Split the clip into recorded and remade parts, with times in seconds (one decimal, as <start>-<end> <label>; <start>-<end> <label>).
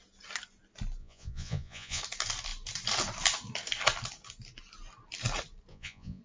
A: 0.0-1.0 recorded; 1.0-2.0 remade; 2.0-5.7 recorded; 5.7-6.2 remade